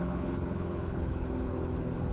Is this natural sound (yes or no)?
no